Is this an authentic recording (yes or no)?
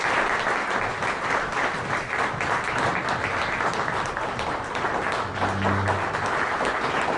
yes